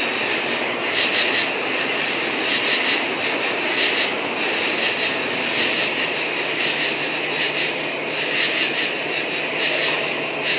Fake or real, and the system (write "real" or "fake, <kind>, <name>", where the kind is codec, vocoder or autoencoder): real